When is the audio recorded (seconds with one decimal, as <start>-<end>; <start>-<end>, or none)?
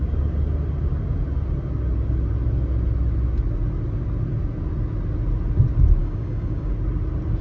0.0-6.0; 6.7-7.4